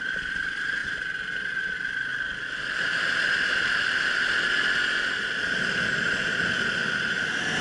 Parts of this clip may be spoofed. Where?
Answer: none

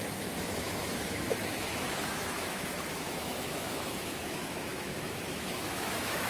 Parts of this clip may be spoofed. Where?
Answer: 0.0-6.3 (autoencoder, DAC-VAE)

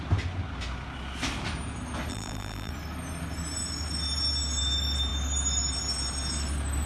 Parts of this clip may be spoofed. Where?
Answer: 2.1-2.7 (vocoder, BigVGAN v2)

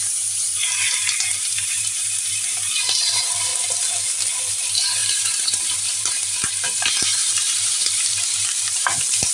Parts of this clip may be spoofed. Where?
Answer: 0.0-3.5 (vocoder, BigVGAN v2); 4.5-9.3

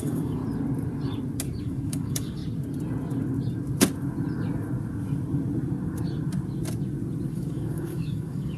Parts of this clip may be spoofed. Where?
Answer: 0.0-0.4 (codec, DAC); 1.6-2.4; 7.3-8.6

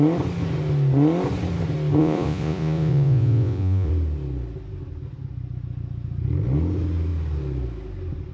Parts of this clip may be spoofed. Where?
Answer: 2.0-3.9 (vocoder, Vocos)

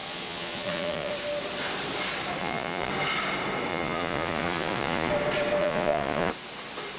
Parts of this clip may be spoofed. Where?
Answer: 0.0-1.1 (vocoder, Vocos); 2.4-2.9; 3.7-5.1; 5.6-6.3

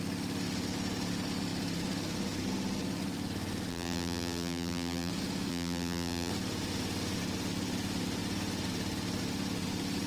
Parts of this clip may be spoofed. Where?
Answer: 3.7-5.1 (vocoder, BigVGAN v2); 5.5-6.3